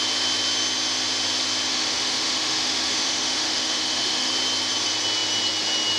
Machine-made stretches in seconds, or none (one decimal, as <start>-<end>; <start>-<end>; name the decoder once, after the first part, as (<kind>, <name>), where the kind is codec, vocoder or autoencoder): 1.7-4.3 (autoencoder, DAC-VAE)